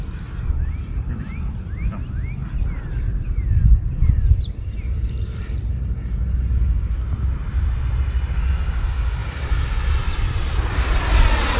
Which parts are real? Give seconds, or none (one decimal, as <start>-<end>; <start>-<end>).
0.0-3.1; 5.6-9.2; 11.2-11.6